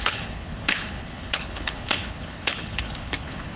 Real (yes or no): no